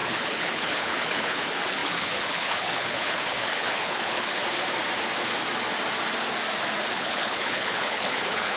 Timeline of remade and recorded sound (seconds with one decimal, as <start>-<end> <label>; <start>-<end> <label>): 0.0-4.4 remade; 4.4-6.9 recorded; 6.9-8.6 remade